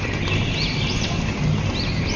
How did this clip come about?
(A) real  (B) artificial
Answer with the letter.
A